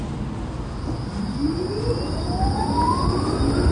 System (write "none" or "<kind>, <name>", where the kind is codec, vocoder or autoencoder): none